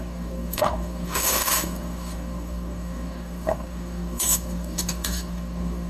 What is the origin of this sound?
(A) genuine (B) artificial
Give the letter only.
B